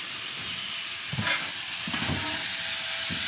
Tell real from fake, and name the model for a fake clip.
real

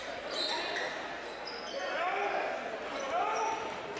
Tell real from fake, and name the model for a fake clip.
real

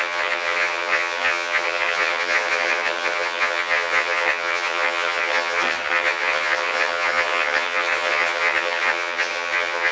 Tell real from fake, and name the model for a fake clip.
fake, vocoder, HiFi-GAN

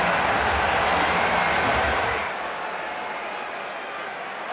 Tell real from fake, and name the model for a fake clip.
real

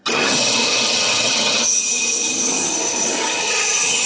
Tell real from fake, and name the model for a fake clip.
fake, vocoder, HiFi-GAN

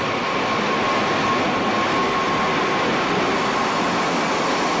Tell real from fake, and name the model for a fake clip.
real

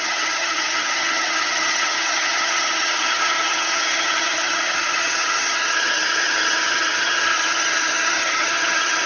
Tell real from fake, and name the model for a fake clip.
fake, vocoder, HiFi-GAN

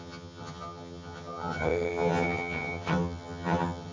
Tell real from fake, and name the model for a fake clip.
fake, vocoder, HiFi-GAN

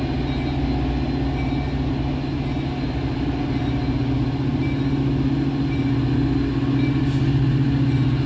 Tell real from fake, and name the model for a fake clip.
real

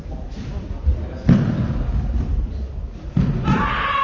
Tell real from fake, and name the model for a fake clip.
real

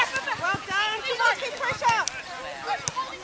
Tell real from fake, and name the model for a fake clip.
real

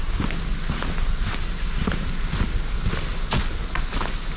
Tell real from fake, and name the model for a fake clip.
real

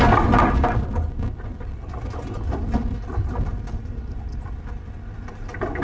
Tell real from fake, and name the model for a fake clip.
real